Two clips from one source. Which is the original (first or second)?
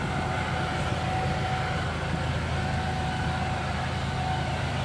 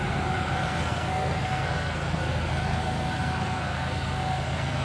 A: first